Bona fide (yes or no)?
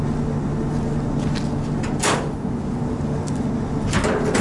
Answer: yes